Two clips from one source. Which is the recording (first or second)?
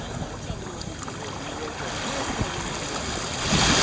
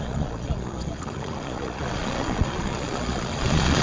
first